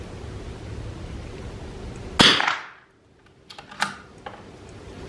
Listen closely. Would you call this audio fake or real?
real